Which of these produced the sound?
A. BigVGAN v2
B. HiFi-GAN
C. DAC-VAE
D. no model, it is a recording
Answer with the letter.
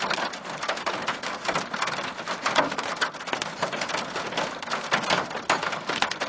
D